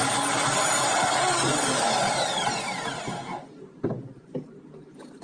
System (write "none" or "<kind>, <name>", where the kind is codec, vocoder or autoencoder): none